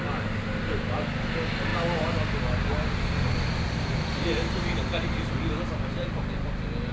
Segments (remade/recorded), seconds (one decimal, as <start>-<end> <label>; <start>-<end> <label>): 0.0-6.9 recorded